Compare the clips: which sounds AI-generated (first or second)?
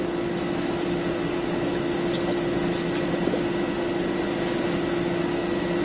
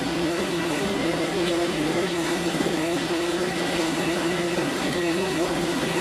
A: second